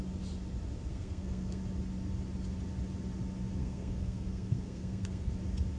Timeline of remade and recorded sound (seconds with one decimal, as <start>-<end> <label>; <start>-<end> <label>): 0.0-0.9 recorded; 0.9-1.6 remade; 1.6-3.6 recorded; 3.6-5.3 remade; 5.3-5.8 recorded